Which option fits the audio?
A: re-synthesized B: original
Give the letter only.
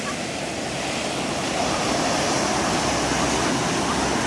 B